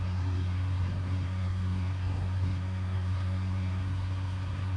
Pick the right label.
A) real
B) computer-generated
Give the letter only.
B